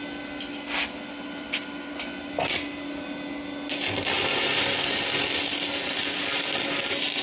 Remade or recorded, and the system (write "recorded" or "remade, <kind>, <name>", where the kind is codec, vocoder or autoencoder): recorded